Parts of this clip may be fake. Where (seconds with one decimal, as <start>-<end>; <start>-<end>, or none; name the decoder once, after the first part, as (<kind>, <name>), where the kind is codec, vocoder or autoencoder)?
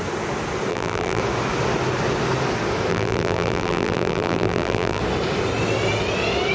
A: 0.7-1.2 (vocoder, BigVGAN v2); 2.9-5.0